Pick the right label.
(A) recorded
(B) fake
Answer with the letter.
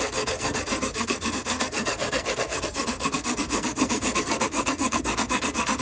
B